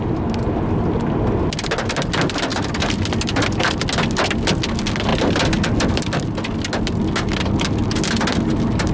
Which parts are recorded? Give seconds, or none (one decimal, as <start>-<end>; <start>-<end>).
0.0-2.5; 3.0-8.9